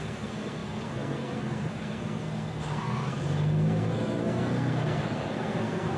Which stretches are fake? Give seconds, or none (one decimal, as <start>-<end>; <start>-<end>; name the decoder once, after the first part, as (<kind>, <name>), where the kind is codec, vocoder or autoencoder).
0.0-6.0 (codec, SNAC)